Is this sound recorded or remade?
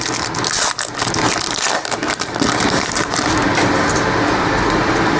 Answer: recorded